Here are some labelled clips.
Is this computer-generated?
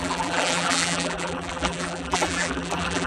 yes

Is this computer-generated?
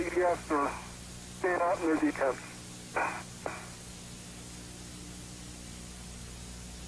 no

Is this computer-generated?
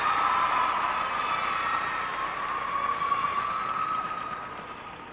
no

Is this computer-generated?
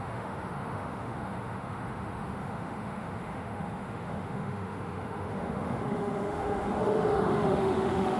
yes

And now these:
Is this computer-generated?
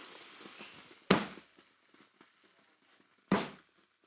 no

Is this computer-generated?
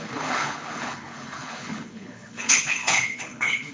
yes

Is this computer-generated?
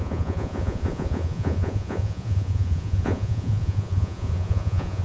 yes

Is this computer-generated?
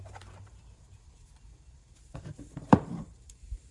yes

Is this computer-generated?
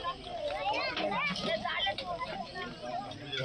no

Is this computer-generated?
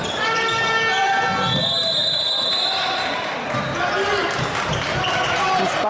no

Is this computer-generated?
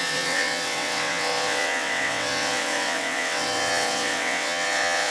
yes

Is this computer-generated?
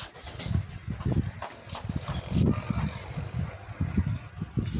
no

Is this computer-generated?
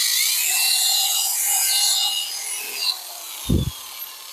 no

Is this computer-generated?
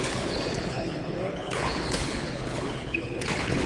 yes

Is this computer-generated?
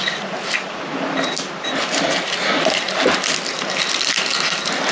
no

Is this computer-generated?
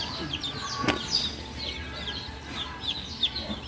no